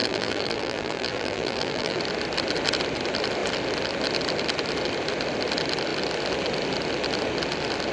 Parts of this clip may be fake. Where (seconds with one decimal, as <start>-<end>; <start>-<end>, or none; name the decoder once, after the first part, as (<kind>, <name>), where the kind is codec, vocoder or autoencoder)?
0.0-2.0 (vocoder, BigVGAN v2)